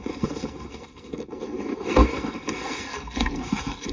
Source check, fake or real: fake